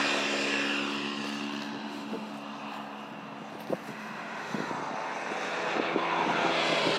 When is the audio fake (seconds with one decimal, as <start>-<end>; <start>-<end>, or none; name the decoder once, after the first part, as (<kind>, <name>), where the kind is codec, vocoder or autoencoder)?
1.8-2.3 (autoencoder, DAC-VAE); 3.9-4.7